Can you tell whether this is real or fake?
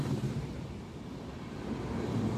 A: real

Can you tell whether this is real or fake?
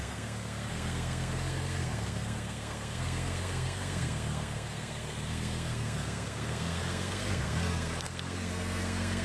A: fake